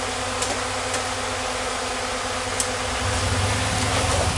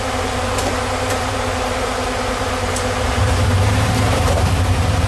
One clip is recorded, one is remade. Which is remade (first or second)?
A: second